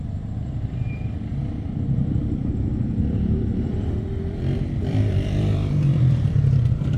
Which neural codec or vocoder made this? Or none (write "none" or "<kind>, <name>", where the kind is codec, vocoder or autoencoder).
vocoder, BigVGAN v2